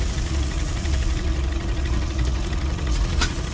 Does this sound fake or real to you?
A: fake